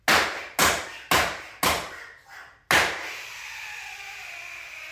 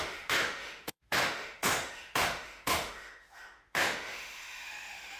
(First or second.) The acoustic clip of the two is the first